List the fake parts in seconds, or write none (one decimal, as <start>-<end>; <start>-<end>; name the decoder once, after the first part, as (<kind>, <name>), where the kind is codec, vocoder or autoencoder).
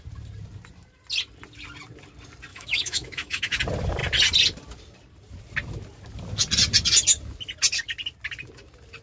2.5-3.6 (autoencoder, DAC-VAE)